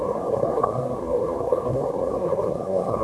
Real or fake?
fake